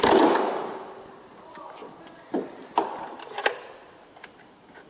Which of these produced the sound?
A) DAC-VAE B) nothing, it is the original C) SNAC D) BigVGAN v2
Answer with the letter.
B